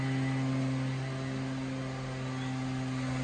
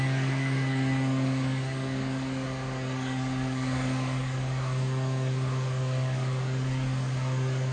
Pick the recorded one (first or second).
first